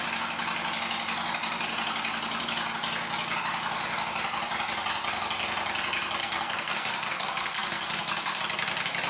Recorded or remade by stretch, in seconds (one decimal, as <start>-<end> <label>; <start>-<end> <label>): 0.0-6.2 recorded; 6.2-8.4 remade; 8.4-9.1 recorded

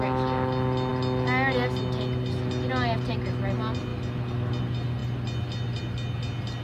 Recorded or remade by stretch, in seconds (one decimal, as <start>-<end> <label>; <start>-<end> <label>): 0.0-6.6 recorded